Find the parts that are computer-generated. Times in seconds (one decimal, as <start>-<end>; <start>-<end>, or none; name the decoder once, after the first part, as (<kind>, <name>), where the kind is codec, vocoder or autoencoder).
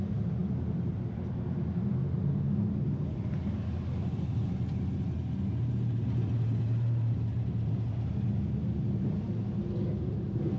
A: none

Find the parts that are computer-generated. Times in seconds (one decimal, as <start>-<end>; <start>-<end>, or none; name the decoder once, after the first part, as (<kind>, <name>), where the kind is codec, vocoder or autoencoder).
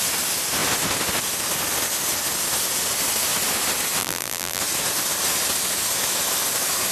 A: 4.0-4.6 (vocoder, BigVGAN v2)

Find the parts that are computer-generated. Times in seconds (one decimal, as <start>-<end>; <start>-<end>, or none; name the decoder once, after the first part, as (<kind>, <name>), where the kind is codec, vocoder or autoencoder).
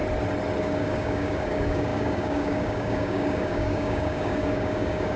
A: 0.6-5.2 (codec, DAC)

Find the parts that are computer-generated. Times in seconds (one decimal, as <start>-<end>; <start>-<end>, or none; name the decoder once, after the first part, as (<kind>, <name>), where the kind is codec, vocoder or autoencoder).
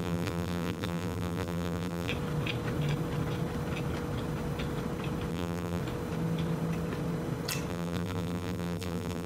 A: 0.0-2.1 (vocoder, BigVGAN v2); 5.3-5.8; 7.7-9.3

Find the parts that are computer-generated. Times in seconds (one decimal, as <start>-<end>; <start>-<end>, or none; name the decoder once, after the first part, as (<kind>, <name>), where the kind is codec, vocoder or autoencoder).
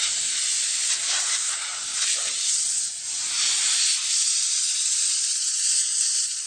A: 1.9-3.0 (vocoder, WaveNeXt)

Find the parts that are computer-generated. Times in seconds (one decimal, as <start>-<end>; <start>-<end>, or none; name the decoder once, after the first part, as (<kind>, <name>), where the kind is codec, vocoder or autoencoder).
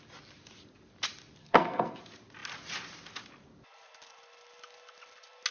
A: 1.4-2.0 (codec, SNAC)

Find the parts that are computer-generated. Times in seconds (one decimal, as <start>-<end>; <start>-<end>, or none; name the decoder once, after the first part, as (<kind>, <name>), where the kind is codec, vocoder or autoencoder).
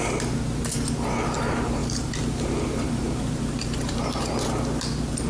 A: 1.8-4.3 (vocoder, BigVGAN v2)